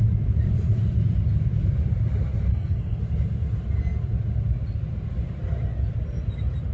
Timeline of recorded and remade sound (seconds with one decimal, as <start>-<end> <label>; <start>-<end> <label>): 0.0-2.5 recorded; 2.5-3.0 remade; 3.0-6.7 recorded